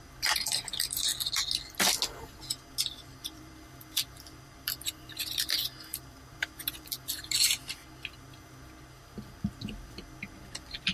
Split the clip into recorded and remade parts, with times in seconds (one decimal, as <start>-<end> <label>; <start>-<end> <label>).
0.0-1.1 remade; 1.1-2.8 recorded; 2.8-7.8 remade; 7.8-9.6 recorded; 9.6-10.9 remade